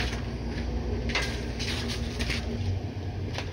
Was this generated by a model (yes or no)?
no